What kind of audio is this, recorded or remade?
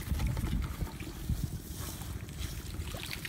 recorded